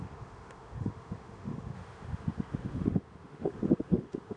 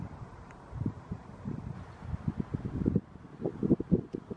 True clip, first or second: second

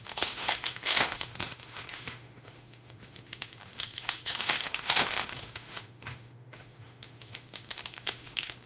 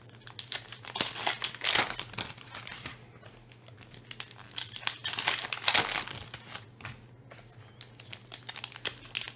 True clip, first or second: second